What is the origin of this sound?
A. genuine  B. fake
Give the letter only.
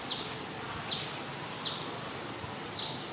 A